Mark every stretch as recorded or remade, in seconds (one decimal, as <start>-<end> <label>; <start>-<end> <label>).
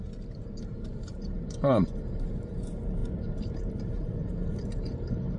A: 0.0-5.4 remade